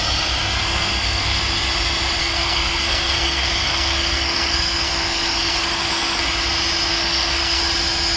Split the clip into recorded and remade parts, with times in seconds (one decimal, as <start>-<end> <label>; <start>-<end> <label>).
0.0-0.6 recorded; 0.6-1.4 remade; 1.4-2.2 recorded; 2.2-6.2 remade; 6.2-6.9 recorded; 6.9-7.6 remade; 7.6-8.2 recorded